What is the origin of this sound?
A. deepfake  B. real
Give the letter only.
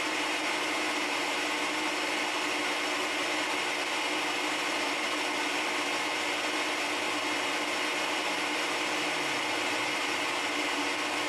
B